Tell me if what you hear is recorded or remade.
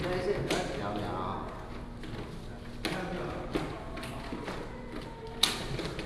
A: recorded